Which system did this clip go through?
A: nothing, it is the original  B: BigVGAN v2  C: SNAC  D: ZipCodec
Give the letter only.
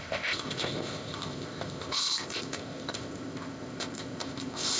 D